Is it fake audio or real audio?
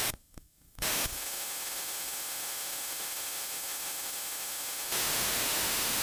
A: fake